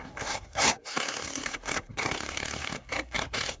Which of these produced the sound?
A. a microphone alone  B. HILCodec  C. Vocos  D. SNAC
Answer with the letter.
D